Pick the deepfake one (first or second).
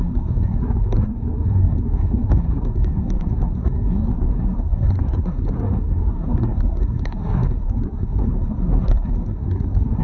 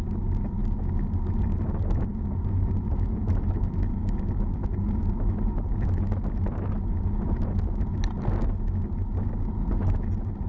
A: first